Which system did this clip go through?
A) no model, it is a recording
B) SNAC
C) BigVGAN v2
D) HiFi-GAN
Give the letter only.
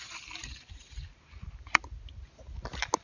A